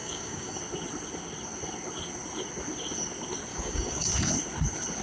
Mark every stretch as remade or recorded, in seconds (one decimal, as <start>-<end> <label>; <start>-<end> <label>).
0.0-0.6 remade; 0.6-3.5 recorded; 3.5-4.1 remade; 4.1-5.0 recorded